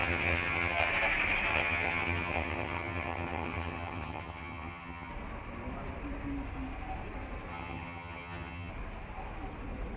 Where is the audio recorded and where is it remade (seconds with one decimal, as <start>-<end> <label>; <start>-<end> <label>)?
0.0-0.9 remade; 0.9-1.5 recorded; 1.5-5.1 remade; 5.1-7.5 recorded; 7.5-8.7 remade; 8.7-10.0 recorded